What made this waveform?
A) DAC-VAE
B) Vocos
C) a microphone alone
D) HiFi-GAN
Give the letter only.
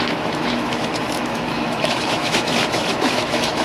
A